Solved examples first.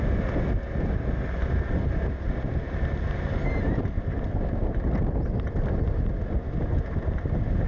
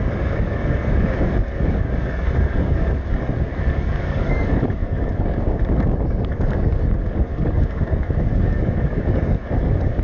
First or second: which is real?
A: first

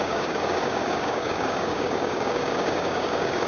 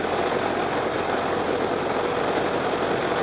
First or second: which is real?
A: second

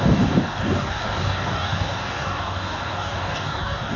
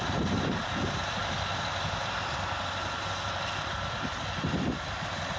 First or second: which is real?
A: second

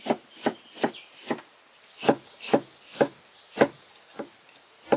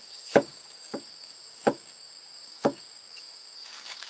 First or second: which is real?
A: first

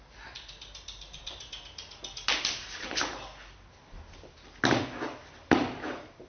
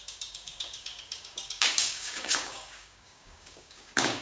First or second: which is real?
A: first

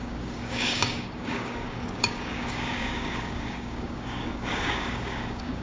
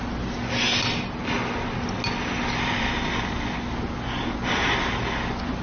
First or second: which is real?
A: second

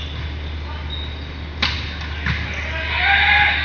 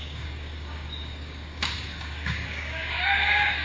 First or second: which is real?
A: first